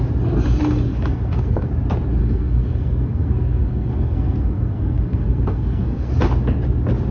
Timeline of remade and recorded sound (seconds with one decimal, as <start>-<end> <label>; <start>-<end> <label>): 0.0-0.9 recorded; 0.9-1.7 remade; 1.7-2.2 recorded; 2.2-6.1 remade; 6.1-7.1 recorded